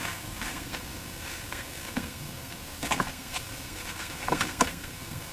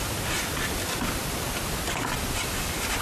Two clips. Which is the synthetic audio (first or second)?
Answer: first